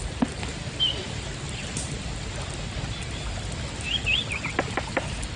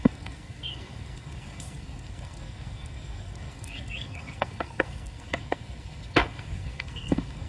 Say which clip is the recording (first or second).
first